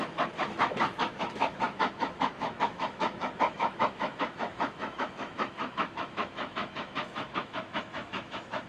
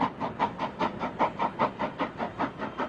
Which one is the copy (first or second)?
first